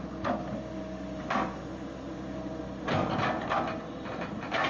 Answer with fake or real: real